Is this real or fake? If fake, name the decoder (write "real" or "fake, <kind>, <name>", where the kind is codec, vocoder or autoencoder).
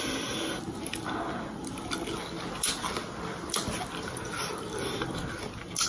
real